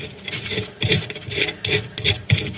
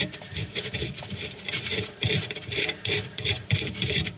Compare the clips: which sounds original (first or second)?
first